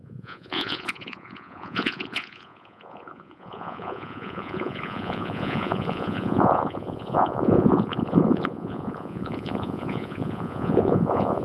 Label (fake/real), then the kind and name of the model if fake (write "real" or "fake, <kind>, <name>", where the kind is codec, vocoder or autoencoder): fake, vocoder, Vocos